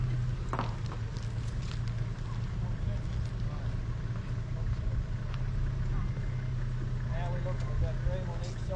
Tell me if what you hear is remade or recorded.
recorded